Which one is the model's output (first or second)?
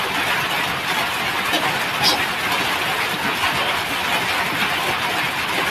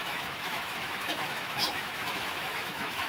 second